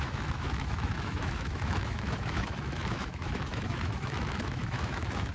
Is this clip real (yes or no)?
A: no